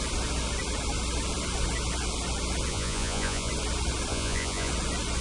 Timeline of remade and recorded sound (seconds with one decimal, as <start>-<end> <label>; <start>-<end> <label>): 0.0-2.7 recorded; 2.7-3.5 remade; 3.5-4.1 recorded; 4.1-4.7 remade; 4.7-5.2 recorded